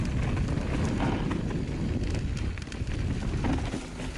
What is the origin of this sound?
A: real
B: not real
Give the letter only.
A